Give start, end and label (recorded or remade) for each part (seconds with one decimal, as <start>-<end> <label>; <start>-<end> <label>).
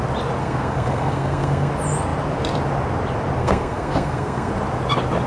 0.0-0.4 recorded; 0.4-1.7 remade; 1.7-3.4 recorded; 3.4-4.5 remade; 4.5-5.3 recorded